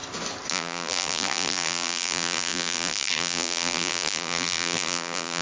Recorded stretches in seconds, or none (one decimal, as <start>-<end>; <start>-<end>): 0.0-0.5